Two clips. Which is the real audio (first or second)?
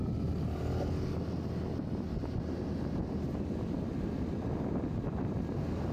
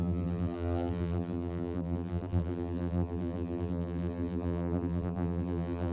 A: first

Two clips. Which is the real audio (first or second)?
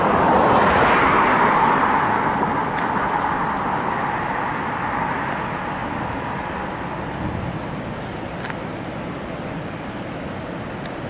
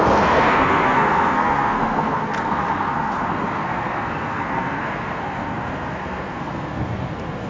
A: first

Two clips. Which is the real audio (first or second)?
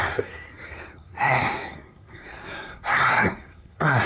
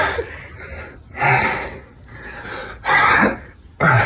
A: second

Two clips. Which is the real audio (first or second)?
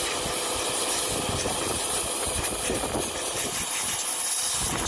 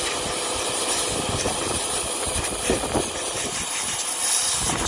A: first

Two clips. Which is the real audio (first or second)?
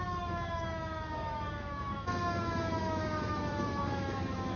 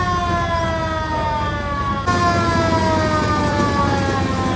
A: second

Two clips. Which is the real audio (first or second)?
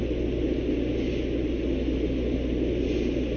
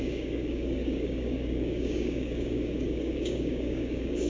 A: first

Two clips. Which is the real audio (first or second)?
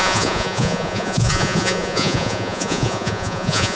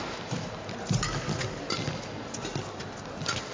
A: second